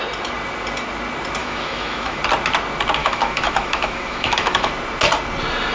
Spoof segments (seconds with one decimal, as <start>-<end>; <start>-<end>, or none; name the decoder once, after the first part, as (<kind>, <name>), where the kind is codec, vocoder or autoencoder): 1.4-2.2 (autoencoder, DAC-VAE); 3.0-4.7